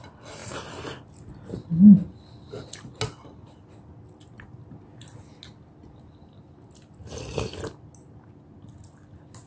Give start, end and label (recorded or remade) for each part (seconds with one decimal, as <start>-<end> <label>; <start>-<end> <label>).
0.0-9.5 recorded